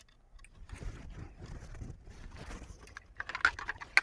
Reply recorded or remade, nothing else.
recorded